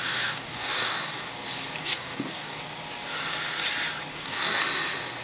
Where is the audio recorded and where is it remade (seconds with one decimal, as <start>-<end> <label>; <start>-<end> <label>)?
0.0-1.3 remade; 1.3-1.8 recorded; 1.8-2.6 remade; 2.6-4.1 recorded; 4.1-4.6 remade; 4.6-5.2 recorded